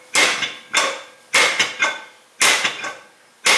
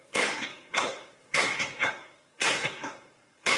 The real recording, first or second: first